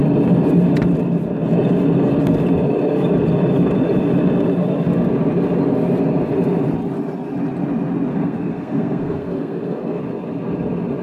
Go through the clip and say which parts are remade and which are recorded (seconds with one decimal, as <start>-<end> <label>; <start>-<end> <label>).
0.0-8.1 recorded; 8.1-10.0 remade; 10.0-11.0 recorded